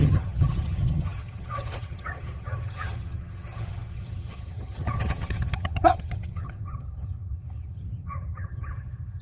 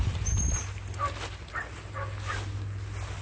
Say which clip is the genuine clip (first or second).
second